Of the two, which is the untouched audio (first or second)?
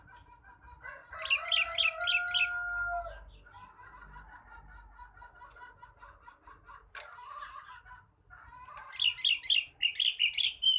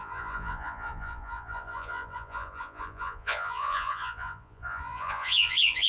first